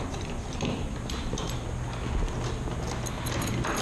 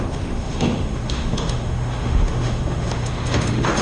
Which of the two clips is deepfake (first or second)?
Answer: second